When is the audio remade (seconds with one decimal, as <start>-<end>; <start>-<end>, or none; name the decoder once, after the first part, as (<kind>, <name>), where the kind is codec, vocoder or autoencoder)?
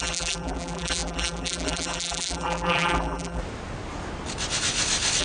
0.0-3.4 (vocoder, BigVGAN v2)